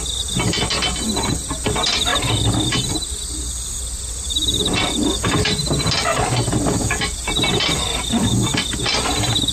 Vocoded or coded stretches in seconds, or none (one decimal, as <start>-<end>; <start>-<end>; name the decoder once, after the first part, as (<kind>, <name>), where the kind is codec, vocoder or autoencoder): none